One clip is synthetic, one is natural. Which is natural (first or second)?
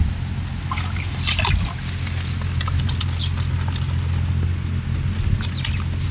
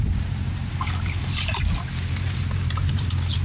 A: first